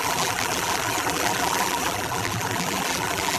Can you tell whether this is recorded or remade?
remade